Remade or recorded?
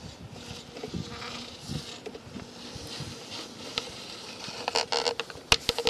recorded